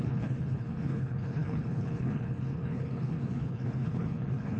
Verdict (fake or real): fake